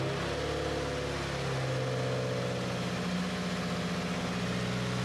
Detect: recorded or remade recorded